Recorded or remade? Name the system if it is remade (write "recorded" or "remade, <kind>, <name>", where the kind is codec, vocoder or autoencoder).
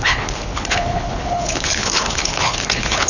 remade, codec, HILCodec